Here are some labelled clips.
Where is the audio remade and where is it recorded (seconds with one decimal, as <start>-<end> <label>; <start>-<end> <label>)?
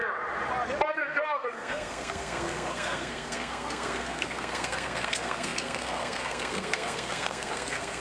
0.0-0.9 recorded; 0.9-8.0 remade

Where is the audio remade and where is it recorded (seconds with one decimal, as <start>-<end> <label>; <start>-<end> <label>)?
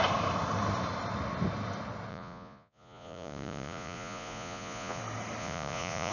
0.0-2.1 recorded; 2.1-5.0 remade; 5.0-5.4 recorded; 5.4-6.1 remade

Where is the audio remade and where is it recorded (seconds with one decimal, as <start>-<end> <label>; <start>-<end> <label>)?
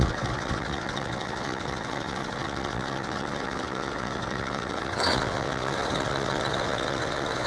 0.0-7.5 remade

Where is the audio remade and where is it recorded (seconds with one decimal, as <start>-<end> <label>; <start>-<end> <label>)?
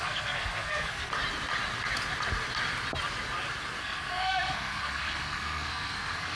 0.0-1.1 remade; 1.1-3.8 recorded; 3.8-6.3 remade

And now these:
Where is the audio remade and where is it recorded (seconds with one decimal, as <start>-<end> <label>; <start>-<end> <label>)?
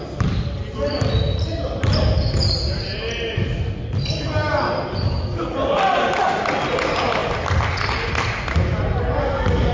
0.0-9.7 recorded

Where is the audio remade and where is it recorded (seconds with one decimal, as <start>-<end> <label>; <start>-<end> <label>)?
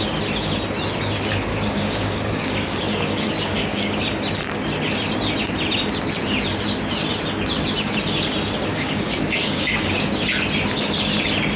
0.0-1.5 recorded; 1.5-4.0 remade; 4.0-8.7 recorded; 8.7-10.2 remade; 10.2-11.6 recorded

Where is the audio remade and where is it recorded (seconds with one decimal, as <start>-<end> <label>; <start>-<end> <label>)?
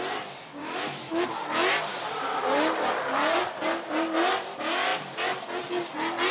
0.0-0.6 recorded; 0.6-1.3 remade; 1.3-6.3 recorded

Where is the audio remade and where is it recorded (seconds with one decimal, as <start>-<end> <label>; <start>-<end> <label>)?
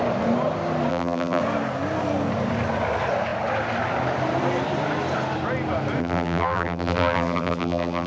0.0-0.9 recorded; 0.9-1.4 remade; 1.4-6.0 recorded; 6.0-8.1 remade